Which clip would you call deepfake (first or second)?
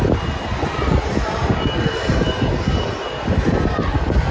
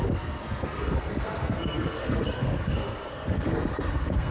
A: second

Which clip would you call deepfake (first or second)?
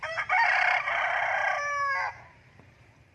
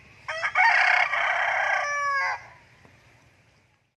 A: first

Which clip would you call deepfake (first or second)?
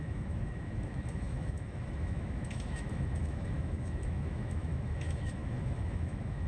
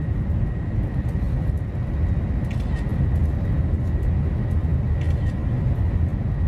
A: first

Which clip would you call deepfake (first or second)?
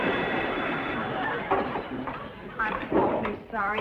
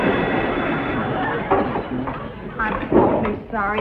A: first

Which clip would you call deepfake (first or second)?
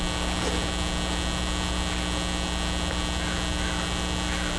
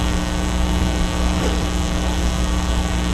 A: second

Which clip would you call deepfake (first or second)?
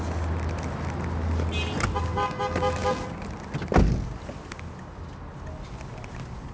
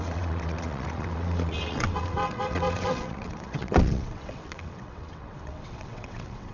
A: second